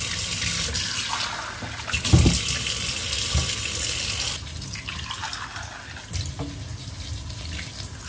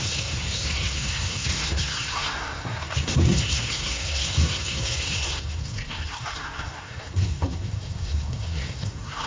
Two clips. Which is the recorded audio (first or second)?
first